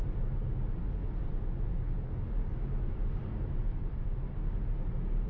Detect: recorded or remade recorded